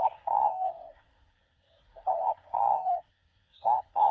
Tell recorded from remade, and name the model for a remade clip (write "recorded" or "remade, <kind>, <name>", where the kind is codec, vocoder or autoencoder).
remade, codec, SNAC